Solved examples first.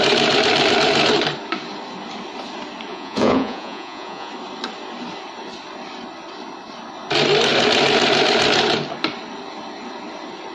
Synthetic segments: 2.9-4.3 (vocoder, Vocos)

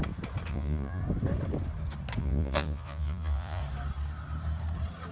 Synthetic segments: 0.5-1.0 (vocoder, Vocos); 2.2-3.6

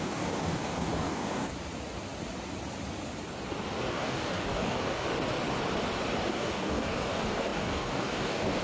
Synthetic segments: 0.0-1.5 (codec, DAC); 3.9-5.1; 6.3-8.6

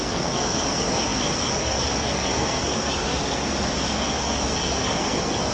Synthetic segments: 0.0-5.5 (codec, SNAC)

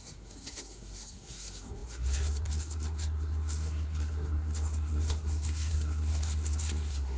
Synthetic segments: 0.0-7.2 (codec, SNAC)

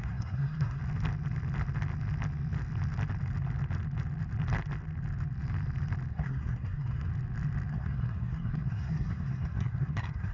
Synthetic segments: 0.0-0.8 (codec, SNAC); 6.1-7.1; 7.7-10.3